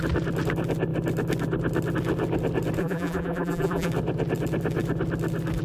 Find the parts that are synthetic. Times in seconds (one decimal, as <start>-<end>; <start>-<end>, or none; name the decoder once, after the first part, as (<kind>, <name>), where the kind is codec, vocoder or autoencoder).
2.8-3.9 (vocoder, BigVGAN v2)